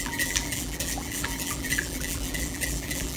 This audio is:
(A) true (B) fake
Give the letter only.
B